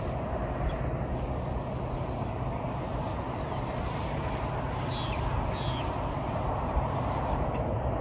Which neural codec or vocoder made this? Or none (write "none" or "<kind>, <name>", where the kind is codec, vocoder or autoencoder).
none